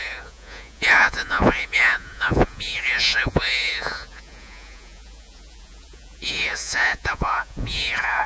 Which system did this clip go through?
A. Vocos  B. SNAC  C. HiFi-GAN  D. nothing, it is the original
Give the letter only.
A